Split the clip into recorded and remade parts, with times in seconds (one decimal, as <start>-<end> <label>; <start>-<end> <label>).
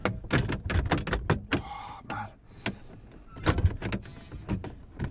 0.0-5.1 recorded